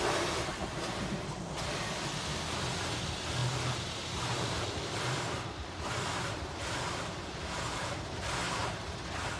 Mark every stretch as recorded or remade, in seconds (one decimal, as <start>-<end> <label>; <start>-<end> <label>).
0.0-3.4 recorded; 3.4-7.4 remade; 7.4-8.6 recorded; 8.6-9.4 remade